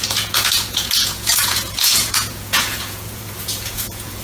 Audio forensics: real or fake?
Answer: fake